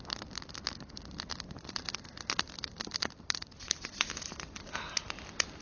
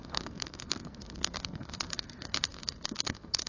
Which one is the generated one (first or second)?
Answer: second